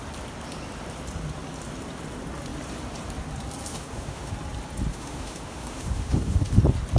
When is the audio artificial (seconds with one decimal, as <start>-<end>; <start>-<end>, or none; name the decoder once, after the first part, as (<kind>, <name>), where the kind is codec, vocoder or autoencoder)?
3.7-4.3 (autoencoder, DAC-VAE); 4.9-6.6